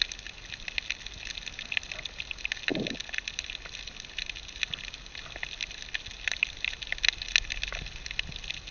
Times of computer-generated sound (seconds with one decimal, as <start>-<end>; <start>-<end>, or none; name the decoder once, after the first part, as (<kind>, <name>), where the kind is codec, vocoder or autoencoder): none